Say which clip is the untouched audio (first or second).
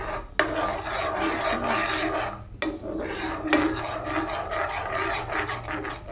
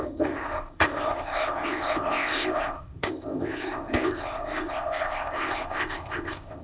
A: first